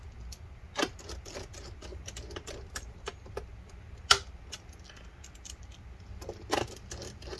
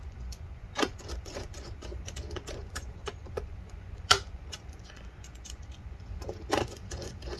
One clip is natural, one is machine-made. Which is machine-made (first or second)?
second